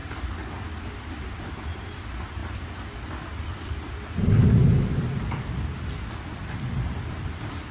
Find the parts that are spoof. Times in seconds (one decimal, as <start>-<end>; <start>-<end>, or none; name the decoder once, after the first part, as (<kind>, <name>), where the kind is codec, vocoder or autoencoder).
none